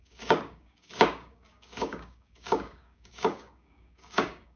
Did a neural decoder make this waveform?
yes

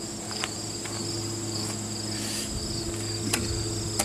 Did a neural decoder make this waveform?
no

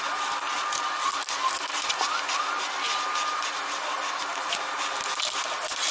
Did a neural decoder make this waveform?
no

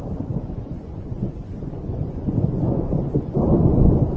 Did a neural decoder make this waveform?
yes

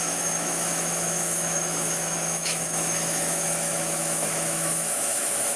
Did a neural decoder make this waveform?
yes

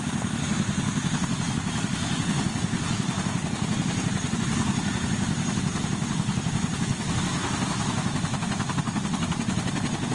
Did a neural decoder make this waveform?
no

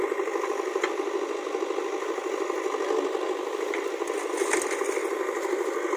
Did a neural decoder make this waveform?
no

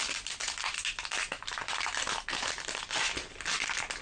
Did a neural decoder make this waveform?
no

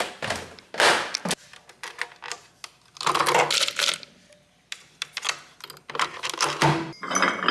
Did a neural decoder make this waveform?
no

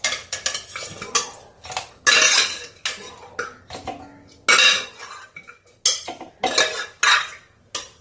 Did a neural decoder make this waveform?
no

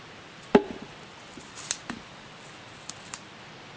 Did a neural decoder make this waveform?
yes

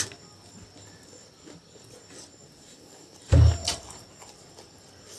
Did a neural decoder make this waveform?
no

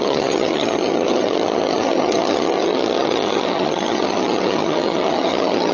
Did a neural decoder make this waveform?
yes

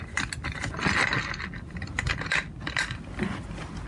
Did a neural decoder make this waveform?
no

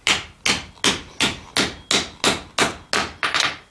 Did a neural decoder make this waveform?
no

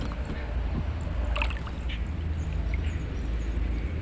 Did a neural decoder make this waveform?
no